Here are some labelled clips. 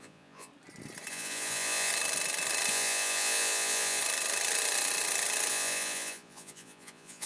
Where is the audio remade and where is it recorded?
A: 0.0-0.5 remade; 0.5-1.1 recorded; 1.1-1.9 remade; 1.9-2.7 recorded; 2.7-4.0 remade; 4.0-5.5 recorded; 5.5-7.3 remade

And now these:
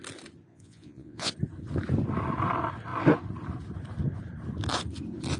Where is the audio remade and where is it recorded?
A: 0.0-0.5 recorded; 0.5-1.3 remade; 1.3-5.4 recorded

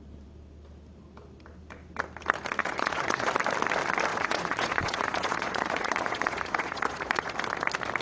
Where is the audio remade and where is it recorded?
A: 0.0-2.6 recorded; 2.6-3.3 remade; 3.3-4.1 recorded; 4.1-7.4 remade; 7.4-8.0 recorded